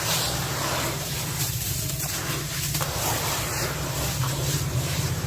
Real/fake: fake